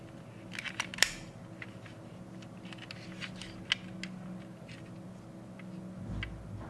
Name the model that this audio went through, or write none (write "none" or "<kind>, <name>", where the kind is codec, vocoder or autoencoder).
none